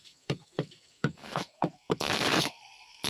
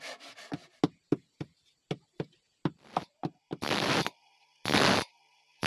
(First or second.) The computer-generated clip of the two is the first